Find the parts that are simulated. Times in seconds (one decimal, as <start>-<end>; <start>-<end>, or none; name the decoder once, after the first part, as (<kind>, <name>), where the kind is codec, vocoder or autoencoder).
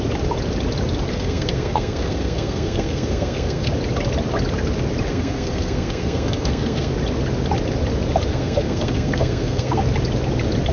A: 1.1-3.7 (codec, SNAC); 5.1-6.9; 8.3-9.8